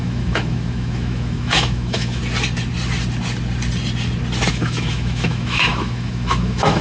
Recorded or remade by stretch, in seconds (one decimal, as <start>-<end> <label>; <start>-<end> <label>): 0.0-2.2 remade; 2.2-4.5 recorded; 4.5-6.8 remade